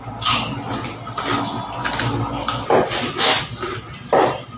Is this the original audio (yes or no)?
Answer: yes